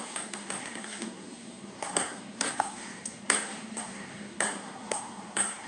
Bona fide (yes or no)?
no